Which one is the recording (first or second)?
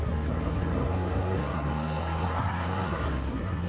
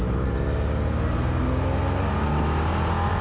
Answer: second